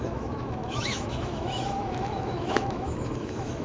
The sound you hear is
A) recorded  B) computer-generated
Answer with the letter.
B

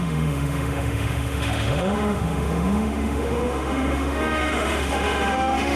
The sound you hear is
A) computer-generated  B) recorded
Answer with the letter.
A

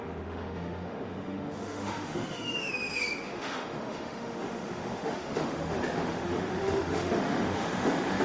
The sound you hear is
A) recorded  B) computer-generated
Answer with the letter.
B